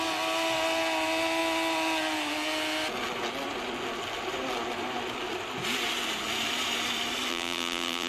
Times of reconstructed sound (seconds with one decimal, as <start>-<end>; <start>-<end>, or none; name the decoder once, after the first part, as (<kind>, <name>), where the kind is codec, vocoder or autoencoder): 7.3-8.1 (vocoder, BigVGAN v2)